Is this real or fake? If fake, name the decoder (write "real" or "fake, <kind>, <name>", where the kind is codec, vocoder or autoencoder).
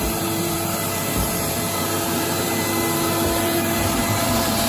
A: fake, vocoder, BigVGAN v2